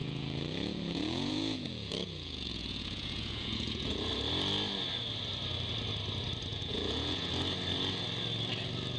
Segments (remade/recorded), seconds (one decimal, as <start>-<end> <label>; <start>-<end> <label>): 0.0-4.1 remade; 4.1-6.5 recorded; 6.5-7.3 remade; 7.3-9.0 recorded